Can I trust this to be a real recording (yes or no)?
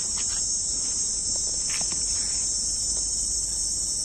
yes